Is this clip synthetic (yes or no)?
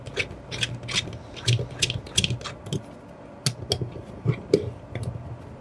no